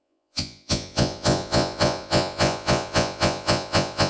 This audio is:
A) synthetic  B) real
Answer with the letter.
A